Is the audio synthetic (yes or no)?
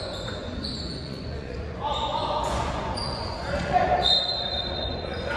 yes